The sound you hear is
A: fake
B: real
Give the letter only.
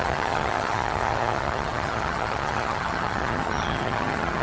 A